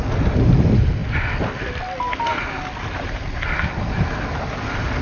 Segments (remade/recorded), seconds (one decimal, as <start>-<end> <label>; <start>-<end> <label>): 0.0-5.0 recorded